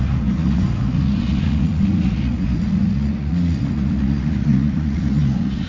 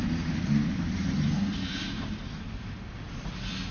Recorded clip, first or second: second